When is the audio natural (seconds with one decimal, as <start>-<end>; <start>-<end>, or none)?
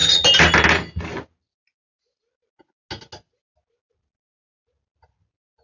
0.0-5.6